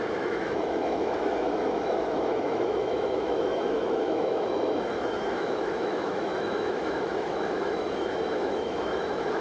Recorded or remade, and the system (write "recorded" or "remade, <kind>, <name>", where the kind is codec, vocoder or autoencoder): remade, autoencoder, DAC-VAE